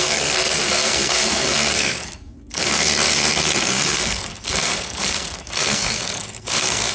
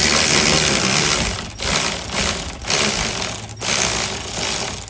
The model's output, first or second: first